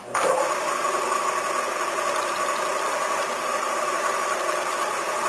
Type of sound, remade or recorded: remade